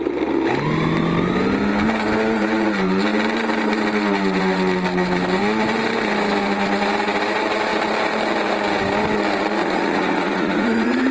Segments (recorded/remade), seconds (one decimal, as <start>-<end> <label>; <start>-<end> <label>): 0.0-9.6 recorded; 9.6-11.1 remade